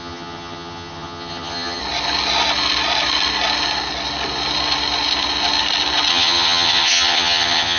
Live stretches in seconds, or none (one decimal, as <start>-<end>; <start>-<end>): 1.8-6.1